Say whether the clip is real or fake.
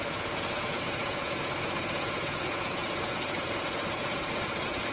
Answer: fake